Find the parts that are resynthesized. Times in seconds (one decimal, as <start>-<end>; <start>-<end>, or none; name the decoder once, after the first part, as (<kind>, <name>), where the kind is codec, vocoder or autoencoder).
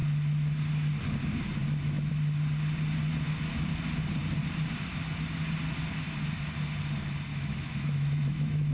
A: 7.3-8.7 (autoencoder, DAC-VAE)